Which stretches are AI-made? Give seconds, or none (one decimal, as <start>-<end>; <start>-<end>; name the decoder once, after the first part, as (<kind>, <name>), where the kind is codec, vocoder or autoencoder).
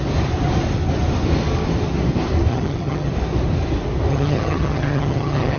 2.5-3.1 (vocoder, HiFi-GAN); 4.1-5.6